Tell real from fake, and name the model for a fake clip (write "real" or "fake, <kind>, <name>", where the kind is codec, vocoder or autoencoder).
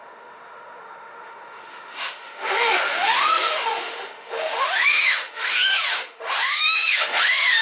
fake, autoencoder, DAC-VAE